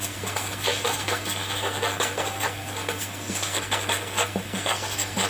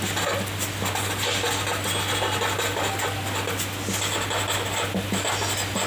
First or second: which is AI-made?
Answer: first